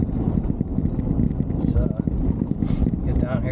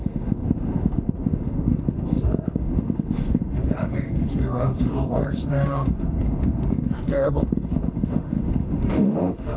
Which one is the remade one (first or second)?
second